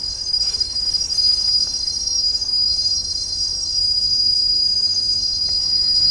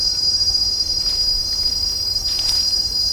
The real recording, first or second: second